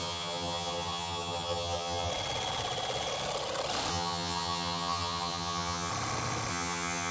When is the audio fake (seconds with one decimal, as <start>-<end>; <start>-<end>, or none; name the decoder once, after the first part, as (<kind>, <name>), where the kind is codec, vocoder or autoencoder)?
0.0-2.1 (vocoder, HiFi-GAN); 3.9-5.9; 6.5-7.1